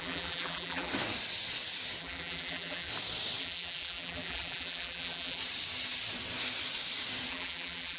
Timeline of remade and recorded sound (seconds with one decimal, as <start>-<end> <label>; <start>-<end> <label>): 0.0-0.9 remade; 0.9-2.0 recorded; 2.0-2.9 remade; 2.9-3.4 recorded; 3.4-5.4 remade; 5.4-7.3 recorded; 7.3-8.0 remade